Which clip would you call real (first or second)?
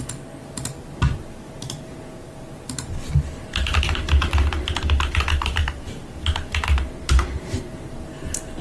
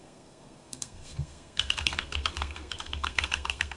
first